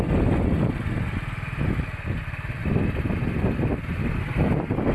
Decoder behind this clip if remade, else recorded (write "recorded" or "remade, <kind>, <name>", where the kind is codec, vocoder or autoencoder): recorded